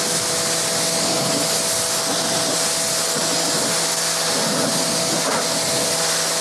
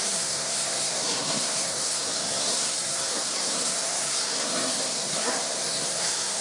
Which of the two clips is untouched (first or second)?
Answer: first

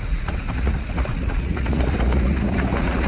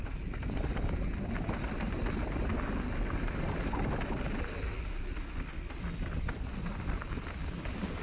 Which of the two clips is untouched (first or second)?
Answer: second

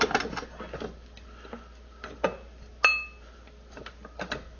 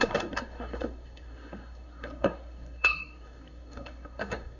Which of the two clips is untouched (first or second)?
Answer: first